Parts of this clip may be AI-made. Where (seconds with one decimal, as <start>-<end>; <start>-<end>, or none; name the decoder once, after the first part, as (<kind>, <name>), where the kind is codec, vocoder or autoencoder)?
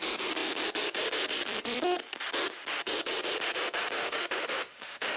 4.0-5.2 (autoencoder, DAC-VAE)